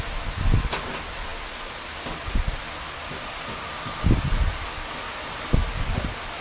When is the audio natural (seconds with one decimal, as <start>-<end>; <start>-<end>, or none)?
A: 0.0-6.4